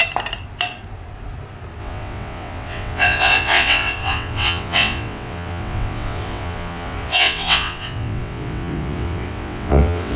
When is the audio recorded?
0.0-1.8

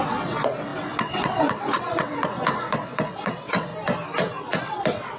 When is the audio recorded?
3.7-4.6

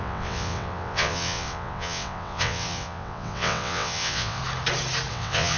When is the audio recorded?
4.4-5.1